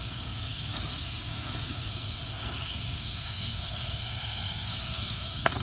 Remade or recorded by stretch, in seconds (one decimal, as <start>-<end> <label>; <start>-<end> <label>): 0.0-5.6 remade

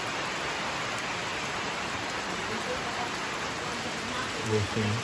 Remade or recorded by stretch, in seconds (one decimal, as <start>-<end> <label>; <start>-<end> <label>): 0.0-1.3 recorded; 1.3-4.3 remade; 4.3-5.0 recorded

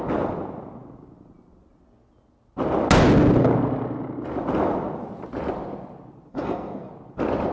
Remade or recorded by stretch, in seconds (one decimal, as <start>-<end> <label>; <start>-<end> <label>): 0.0-6.3 recorded; 6.3-6.9 remade; 6.9-7.5 recorded

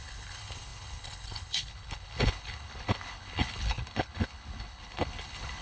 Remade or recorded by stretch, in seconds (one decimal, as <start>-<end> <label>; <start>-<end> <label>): 0.0-5.6 remade

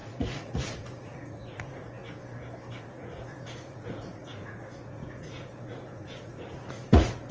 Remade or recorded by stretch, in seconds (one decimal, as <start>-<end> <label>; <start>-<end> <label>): 0.0-2.0 remade; 2.0-2.8 recorded; 2.8-7.3 remade

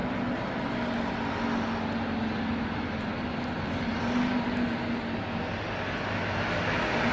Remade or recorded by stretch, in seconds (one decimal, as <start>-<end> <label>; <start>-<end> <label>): 0.0-7.1 recorded

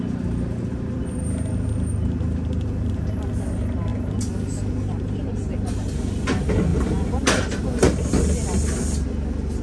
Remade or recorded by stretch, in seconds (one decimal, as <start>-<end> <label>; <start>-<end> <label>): 0.0-9.6 recorded